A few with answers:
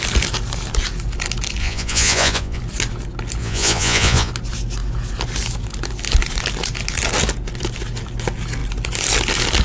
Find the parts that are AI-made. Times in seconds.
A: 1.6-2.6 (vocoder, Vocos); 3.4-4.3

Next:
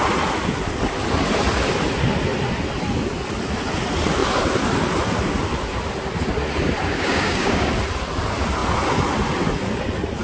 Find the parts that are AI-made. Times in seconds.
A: 6.9-7.7 (codec, DAC)

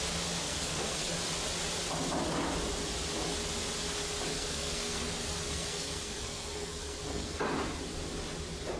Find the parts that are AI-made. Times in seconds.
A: 0.4-1.1 (codec, SNAC); 4.3-7.4

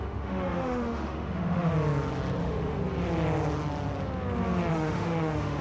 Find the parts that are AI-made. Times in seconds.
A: 0.0-1.7 (autoencoder, DAC-VAE); 2.4-2.8; 4.7-5.6

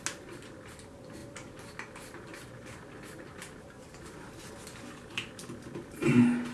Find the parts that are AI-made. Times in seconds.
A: none